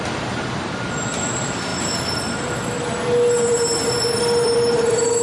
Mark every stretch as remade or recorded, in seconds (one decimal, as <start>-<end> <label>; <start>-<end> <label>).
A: 0.0-1.7 remade; 1.7-4.2 recorded; 4.2-5.2 remade